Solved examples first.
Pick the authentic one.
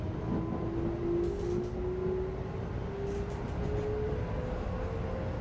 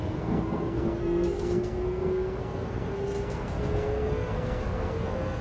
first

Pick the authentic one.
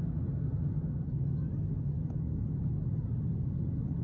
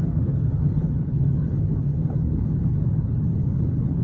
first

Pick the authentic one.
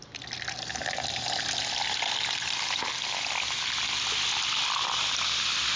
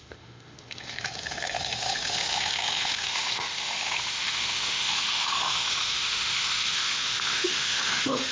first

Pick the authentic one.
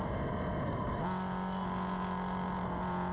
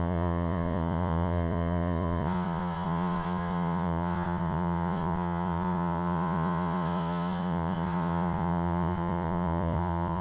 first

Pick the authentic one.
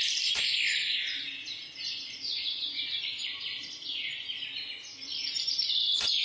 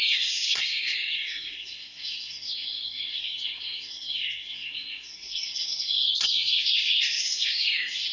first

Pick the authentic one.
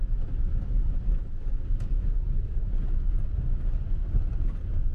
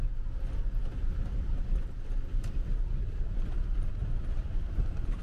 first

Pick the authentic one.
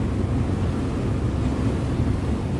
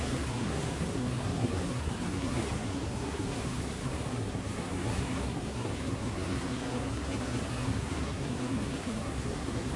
first